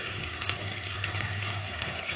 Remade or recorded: remade